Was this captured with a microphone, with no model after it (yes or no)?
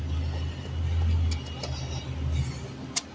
yes